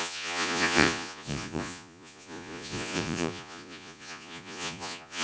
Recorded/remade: remade